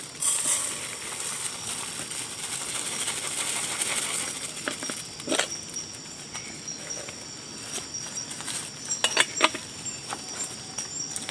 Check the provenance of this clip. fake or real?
real